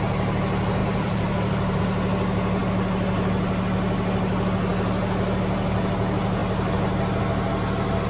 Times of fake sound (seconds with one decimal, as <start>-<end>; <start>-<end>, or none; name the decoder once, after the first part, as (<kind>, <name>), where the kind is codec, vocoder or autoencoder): 0.8-1.8 (vocoder, BigVGAN v2)